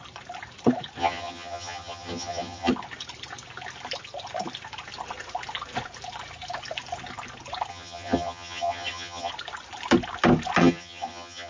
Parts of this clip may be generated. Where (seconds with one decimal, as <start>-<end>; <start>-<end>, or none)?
1.0-2.7; 7.7-9.3; 10.6-11.5